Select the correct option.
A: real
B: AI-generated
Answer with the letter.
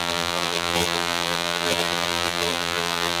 B